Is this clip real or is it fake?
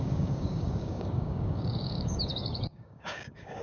fake